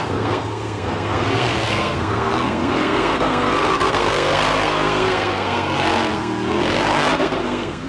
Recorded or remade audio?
remade